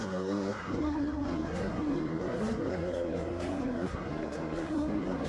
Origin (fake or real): fake